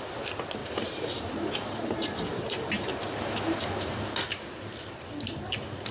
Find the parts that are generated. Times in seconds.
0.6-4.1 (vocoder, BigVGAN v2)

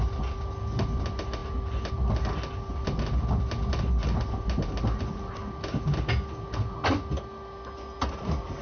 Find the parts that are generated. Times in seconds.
none

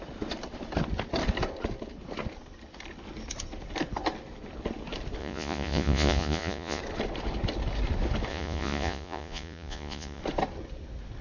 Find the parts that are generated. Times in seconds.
5.2-6.8 (vocoder, Vocos); 8.3-10.2

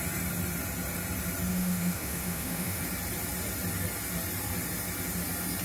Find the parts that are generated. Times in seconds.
1.5-2.8 (autoencoder, DAC-VAE)

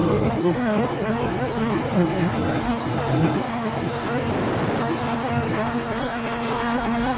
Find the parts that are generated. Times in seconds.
0.0-4.3 (codec, SNAC); 4.8-7.2

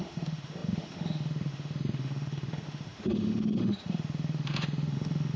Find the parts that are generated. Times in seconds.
0.0-5.4 (autoencoder, DAC-VAE)

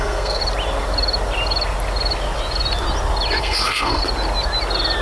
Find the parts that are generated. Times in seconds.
0.0-0.4 (codec, SNAC); 3.4-4.0